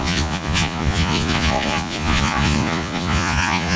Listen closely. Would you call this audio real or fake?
fake